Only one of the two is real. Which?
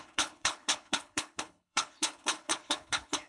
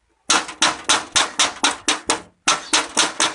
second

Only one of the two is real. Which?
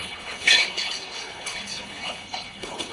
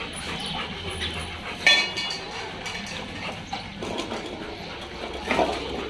second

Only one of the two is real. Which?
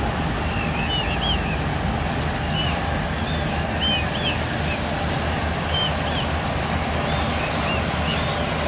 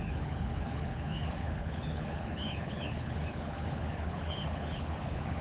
first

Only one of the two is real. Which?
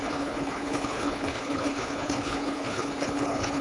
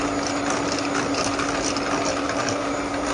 second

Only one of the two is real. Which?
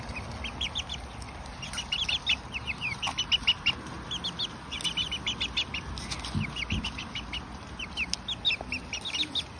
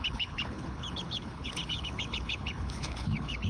first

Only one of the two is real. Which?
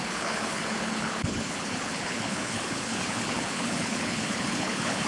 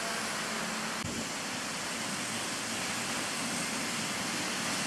second